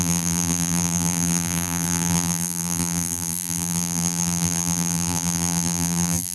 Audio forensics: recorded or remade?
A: remade